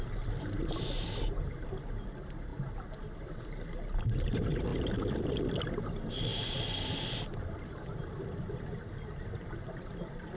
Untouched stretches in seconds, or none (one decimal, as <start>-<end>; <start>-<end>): 0.0-10.4